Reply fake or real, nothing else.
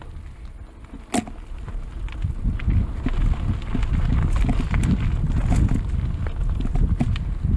real